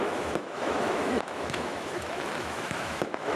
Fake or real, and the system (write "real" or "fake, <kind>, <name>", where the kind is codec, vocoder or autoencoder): fake, autoencoder, DAC-VAE